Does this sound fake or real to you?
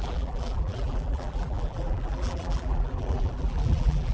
fake